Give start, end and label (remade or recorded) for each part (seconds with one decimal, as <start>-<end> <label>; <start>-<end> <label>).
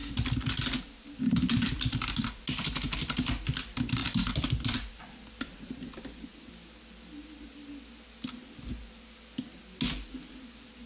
0.0-10.9 recorded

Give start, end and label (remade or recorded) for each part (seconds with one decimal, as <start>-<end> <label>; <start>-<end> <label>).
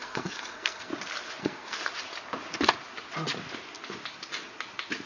0.0-0.9 remade; 0.9-1.4 recorded; 1.4-1.8 remade; 1.8-5.1 recorded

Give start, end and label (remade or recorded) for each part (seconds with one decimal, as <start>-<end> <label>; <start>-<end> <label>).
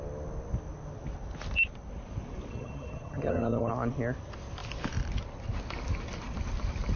0.0-2.5 recorded; 2.5-3.7 remade; 3.7-7.0 recorded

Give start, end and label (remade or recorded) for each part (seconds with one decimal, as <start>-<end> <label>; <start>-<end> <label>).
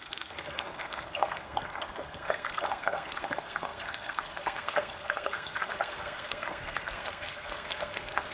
0.0-8.3 remade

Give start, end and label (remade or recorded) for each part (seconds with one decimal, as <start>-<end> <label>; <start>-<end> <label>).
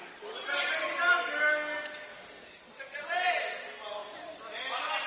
0.0-1.0 remade; 1.0-2.1 recorded; 2.1-3.3 remade; 3.3-4.0 recorded; 4.0-5.1 remade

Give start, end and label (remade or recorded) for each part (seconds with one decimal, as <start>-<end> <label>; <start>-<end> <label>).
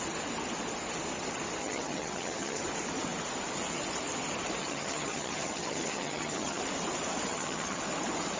0.0-1.6 recorded; 1.6-2.6 remade; 2.6-4.6 recorded; 4.6-6.6 remade; 6.6-7.3 recorded; 7.3-7.8 remade; 7.8-8.4 recorded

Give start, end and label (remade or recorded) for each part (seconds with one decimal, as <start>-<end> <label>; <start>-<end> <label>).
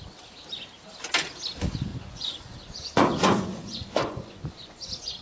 0.0-1.9 recorded; 1.9-5.2 remade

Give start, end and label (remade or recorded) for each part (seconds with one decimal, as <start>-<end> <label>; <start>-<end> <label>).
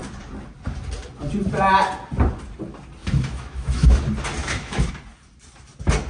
0.0-3.0 recorded; 3.0-3.9 remade; 3.9-4.4 recorded; 4.4-4.9 remade; 4.9-6.1 recorded